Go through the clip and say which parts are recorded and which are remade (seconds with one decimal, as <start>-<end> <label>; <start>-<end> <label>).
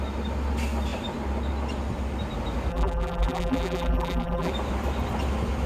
0.0-2.7 recorded; 2.7-4.5 remade; 4.5-5.7 recorded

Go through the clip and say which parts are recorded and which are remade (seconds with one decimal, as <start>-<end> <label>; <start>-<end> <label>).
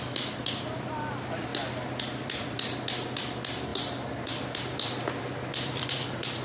0.0-1.5 remade; 1.5-2.0 recorded; 2.0-6.4 remade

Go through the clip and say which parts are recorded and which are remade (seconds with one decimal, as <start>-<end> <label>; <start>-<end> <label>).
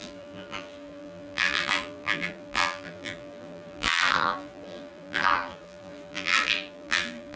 0.0-7.4 remade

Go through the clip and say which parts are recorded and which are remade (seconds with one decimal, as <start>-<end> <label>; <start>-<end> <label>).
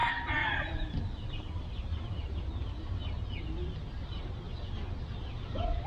0.0-5.9 recorded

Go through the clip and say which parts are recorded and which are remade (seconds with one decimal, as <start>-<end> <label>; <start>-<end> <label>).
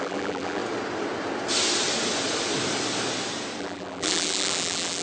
0.0-0.6 remade; 0.6-3.6 recorded; 3.6-5.0 remade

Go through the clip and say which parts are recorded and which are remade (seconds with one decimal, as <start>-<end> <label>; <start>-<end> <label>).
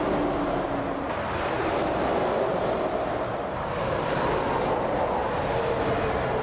0.0-5.2 recorded; 5.2-5.7 remade; 5.7-6.4 recorded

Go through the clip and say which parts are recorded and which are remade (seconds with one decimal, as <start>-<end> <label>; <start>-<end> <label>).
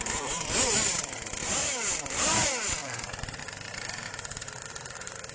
0.0-1.6 remade; 1.6-2.1 recorded; 2.1-5.3 remade